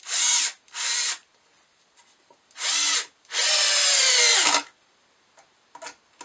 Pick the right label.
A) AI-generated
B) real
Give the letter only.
B